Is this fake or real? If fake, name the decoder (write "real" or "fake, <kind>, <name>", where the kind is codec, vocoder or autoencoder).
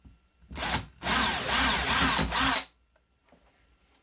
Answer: real